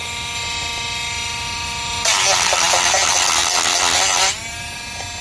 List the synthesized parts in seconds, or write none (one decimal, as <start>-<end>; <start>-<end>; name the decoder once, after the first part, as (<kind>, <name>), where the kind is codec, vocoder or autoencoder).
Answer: none